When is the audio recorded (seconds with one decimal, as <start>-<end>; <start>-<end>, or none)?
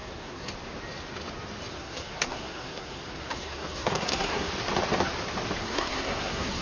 0.5-1.7; 4.5-5.6